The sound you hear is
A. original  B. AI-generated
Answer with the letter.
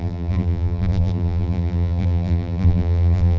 B